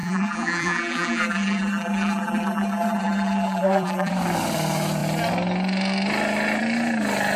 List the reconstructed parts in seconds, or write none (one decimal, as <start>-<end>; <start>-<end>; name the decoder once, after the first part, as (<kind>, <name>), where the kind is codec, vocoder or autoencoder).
0.0-4.1 (vocoder, BigVGAN v2)